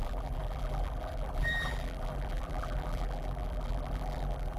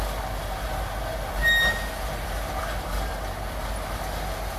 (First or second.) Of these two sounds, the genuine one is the second